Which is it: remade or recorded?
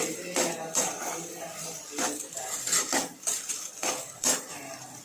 remade